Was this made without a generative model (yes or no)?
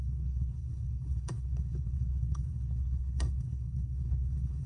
no